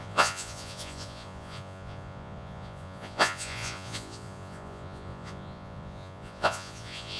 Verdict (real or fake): fake